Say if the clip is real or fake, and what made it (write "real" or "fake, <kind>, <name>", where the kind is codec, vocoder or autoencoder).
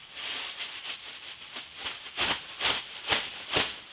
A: real